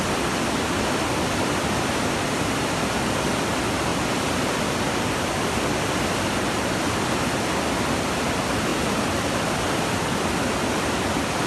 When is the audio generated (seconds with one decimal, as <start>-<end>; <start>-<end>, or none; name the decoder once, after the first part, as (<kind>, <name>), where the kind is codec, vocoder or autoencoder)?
none